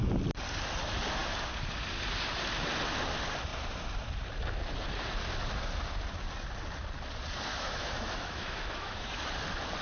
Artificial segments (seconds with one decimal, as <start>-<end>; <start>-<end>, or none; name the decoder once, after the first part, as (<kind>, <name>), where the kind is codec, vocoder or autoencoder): 7.5-9.2 (autoencoder, DAC-VAE)